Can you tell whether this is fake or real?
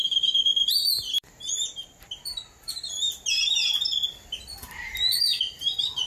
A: real